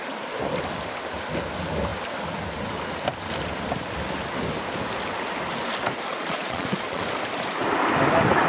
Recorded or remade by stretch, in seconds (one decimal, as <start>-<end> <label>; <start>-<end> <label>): 0.0-6.1 recorded; 6.1-7.0 remade; 7.0-8.5 recorded